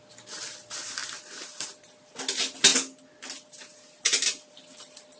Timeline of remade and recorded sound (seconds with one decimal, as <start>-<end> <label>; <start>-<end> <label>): 0.0-5.2 recorded